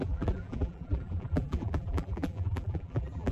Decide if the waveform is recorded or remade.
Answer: remade